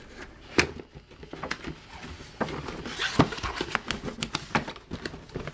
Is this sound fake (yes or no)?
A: no